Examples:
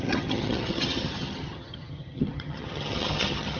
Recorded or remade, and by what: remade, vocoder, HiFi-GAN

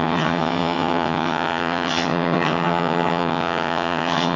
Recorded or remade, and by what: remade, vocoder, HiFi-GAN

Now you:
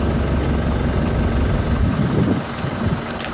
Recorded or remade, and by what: recorded